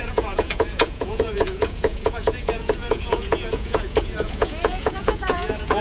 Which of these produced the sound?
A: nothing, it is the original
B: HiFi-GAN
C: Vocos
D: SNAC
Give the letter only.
C